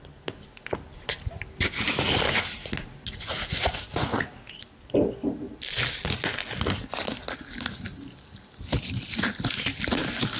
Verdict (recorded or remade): recorded